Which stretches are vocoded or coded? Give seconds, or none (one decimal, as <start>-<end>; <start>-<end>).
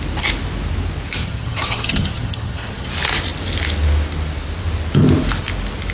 1.2-2.9